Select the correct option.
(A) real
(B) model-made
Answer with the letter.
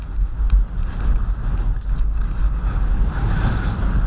A